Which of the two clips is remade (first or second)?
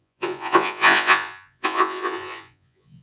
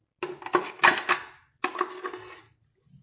first